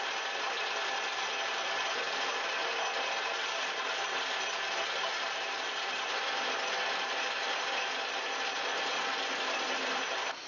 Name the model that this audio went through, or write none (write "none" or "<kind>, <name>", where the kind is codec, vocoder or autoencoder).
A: none